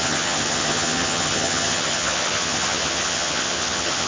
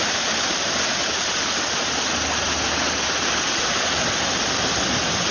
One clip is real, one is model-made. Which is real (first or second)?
second